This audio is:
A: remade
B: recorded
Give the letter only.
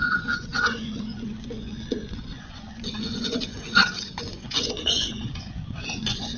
A